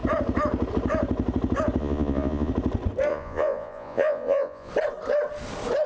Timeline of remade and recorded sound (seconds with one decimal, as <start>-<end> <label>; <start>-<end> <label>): 0.0-1.8 recorded; 1.8-2.5 remade; 2.5-3.1 recorded; 3.1-4.7 remade; 4.7-5.9 recorded